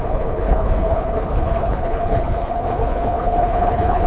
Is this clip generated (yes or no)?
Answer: yes